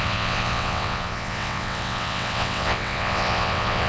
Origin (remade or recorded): remade